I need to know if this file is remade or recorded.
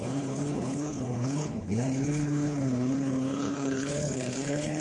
remade